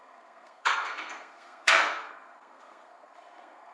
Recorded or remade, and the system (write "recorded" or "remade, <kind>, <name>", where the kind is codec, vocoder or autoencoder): remade, codec, SNAC